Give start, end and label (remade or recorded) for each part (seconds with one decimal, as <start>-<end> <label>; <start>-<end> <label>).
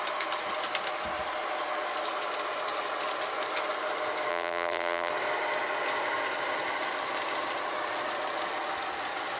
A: 0.0-4.3 recorded; 4.3-5.1 remade; 5.1-9.4 recorded